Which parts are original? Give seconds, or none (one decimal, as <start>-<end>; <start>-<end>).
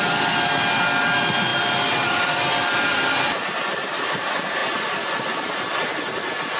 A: 0.0-6.6